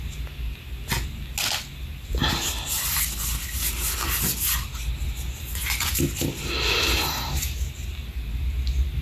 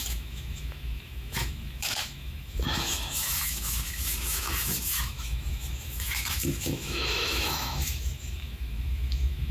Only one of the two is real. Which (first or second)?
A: first